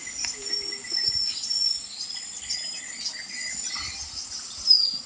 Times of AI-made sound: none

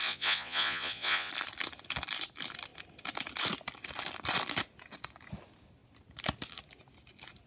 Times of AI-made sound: 0.0-1.3 (vocoder, Vocos)

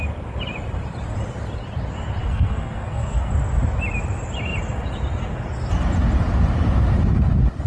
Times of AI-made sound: 2.2-3.3 (codec, SNAC)

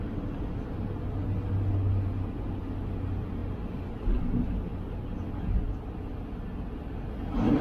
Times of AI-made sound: none